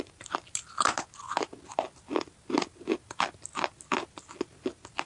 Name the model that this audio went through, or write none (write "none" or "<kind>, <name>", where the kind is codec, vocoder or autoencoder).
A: none